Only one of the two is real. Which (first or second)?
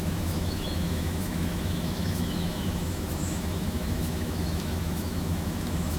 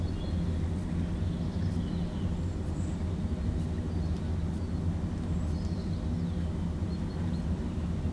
second